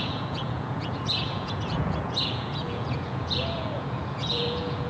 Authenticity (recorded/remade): remade